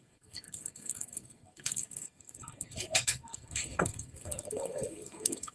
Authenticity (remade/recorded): remade